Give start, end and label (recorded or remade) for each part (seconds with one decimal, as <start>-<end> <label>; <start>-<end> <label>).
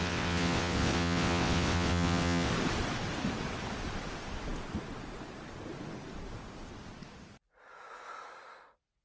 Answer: 0.0-2.5 remade; 2.5-9.0 recorded